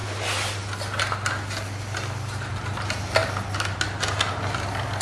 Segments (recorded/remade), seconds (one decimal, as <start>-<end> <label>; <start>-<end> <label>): 0.0-5.0 recorded